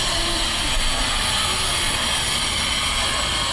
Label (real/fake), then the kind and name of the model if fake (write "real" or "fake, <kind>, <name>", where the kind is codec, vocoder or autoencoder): real